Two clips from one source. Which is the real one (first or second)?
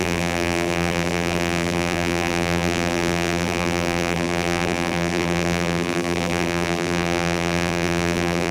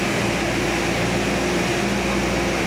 second